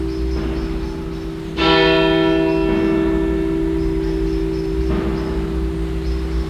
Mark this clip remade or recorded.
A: recorded